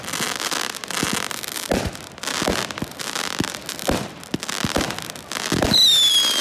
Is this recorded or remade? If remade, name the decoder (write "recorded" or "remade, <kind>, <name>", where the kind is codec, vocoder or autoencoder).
recorded